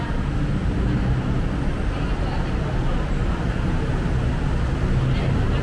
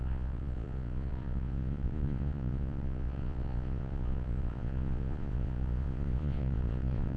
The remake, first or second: second